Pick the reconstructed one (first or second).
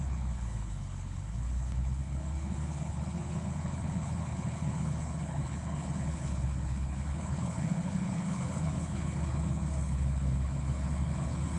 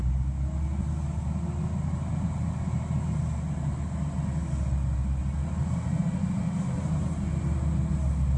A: first